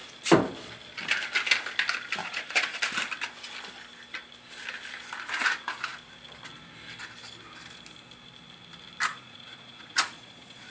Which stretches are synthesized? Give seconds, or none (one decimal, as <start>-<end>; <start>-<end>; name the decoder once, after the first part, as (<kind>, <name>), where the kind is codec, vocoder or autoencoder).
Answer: 2.2-2.8 (vocoder, Vocos); 9.1-10.7